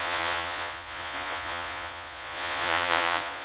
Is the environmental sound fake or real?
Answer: fake